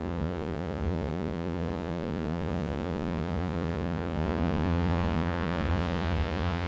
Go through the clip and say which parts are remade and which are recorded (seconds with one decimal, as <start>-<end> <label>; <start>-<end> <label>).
0.0-6.7 remade